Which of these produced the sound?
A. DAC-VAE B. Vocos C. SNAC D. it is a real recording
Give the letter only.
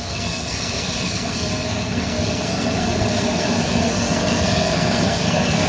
C